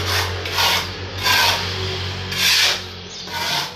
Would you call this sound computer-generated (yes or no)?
no